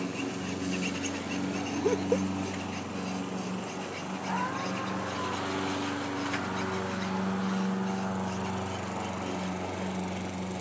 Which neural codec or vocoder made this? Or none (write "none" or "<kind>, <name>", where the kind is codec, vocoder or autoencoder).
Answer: none